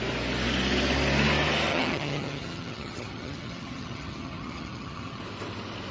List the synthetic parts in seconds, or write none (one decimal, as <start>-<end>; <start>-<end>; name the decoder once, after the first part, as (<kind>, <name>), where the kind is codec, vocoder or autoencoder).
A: 1.7-5.2 (vocoder, HiFi-GAN)